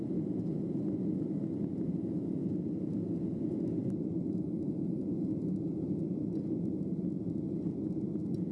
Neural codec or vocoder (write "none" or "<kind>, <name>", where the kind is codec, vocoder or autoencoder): none